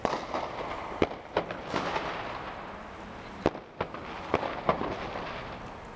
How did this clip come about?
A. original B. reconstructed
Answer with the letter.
A